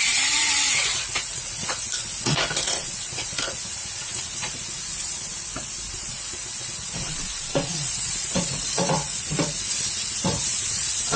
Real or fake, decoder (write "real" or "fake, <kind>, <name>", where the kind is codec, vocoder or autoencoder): fake, vocoder, Vocos